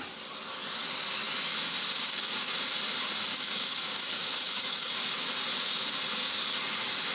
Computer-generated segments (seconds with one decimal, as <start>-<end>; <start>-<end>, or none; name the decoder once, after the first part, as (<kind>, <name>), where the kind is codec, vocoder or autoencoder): 1.9-2.5 (codec, DAC); 3.3-4.9